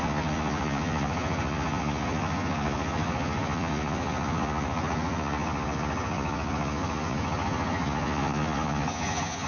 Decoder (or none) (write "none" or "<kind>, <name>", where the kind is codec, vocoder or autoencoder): vocoder, Vocos